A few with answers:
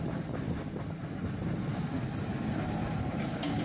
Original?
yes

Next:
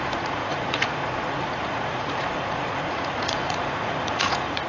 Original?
no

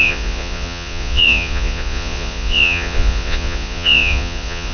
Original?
no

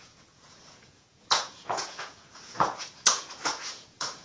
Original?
no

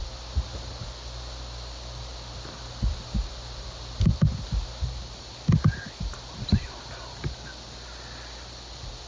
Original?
yes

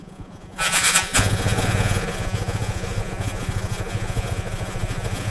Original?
no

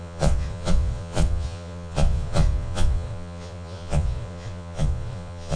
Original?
no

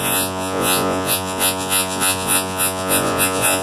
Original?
no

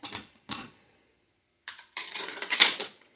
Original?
no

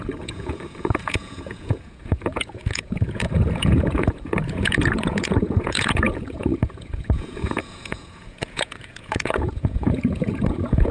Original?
no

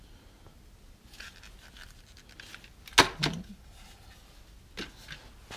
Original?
yes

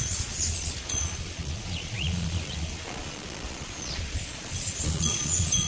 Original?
no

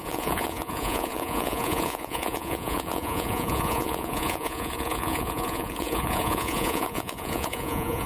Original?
no